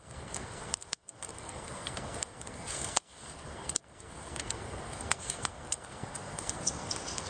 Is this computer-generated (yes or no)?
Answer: yes